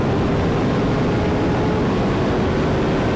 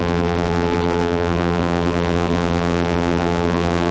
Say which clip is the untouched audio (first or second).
first